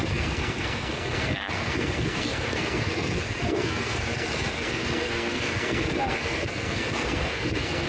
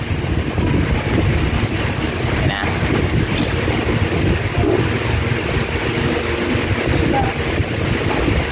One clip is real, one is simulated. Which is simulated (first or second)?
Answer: first